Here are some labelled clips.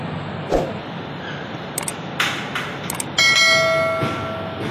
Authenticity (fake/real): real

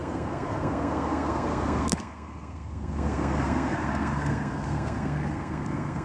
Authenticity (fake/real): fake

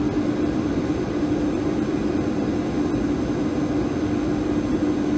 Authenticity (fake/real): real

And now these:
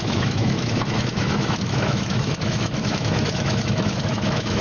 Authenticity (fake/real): fake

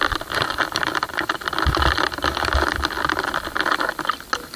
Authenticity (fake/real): real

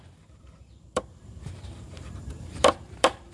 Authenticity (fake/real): fake